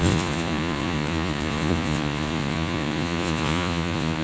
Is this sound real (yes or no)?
no